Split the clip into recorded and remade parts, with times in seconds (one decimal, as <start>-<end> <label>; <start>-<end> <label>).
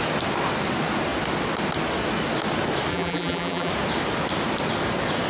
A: 0.0-2.9 recorded; 2.9-3.7 remade; 3.7-5.3 recorded